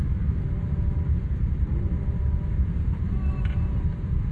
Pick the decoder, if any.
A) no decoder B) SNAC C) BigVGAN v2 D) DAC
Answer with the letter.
C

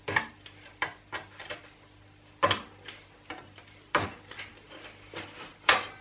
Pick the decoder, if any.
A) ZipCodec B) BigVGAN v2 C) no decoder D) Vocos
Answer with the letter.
B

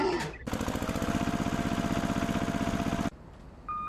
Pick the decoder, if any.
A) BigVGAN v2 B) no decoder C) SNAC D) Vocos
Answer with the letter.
B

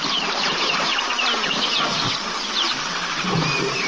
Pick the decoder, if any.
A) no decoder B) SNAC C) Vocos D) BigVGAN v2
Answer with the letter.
A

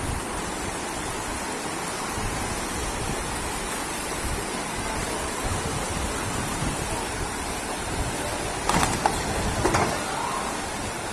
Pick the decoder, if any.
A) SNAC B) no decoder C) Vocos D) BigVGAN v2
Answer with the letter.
B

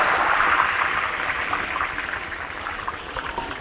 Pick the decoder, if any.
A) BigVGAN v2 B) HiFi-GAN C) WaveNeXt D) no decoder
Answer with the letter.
A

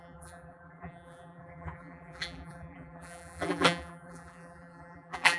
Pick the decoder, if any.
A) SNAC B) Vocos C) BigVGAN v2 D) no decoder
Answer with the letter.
C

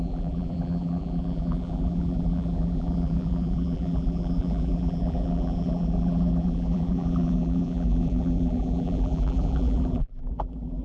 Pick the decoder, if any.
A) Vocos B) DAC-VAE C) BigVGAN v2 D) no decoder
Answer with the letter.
C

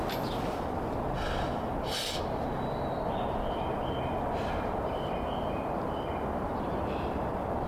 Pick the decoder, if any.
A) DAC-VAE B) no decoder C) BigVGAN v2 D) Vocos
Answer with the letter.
B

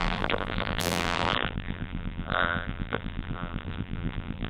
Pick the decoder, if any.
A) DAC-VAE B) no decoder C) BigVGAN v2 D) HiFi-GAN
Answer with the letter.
C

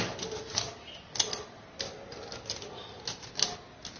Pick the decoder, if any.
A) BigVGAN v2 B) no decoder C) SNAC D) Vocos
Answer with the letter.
B